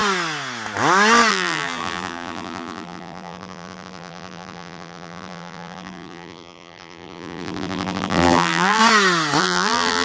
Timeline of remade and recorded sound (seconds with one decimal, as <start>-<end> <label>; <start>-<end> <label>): 0.0-1.3 recorded; 1.3-8.8 remade; 8.8-9.4 recorded; 9.4-10.0 remade